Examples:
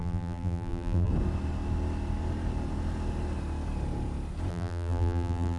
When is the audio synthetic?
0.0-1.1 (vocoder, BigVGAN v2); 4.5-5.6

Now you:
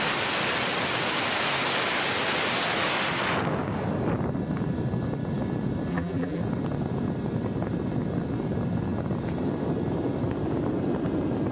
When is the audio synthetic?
5.9-6.4 (vocoder, BigVGAN v2)

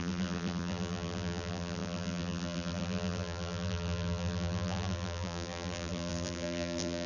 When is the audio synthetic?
0.0-7.1 (vocoder, BigVGAN v2)